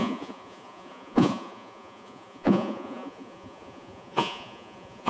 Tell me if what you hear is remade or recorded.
remade